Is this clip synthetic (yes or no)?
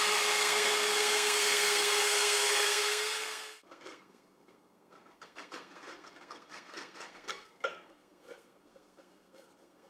yes